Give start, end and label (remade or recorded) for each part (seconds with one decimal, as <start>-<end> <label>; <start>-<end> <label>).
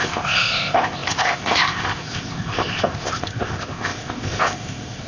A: 0.0-5.1 remade